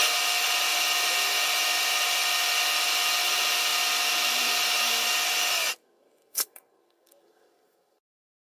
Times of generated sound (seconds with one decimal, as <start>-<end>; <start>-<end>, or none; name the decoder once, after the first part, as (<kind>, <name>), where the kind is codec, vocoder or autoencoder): 5.8-8.5 (codec, SNAC)